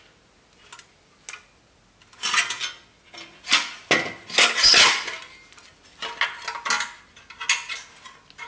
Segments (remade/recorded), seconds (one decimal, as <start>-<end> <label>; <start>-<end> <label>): 0.0-8.5 recorded